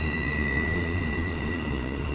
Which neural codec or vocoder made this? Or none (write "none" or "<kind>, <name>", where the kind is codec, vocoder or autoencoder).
vocoder, Vocos